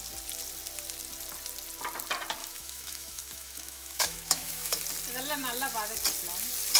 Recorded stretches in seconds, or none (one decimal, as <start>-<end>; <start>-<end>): 0.0-2.4; 4.8-6.8